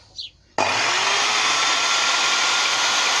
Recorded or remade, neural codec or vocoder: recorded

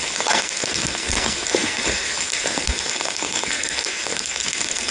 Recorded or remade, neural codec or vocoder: remade, codec, SNAC